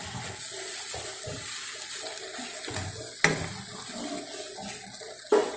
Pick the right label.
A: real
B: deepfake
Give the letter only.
A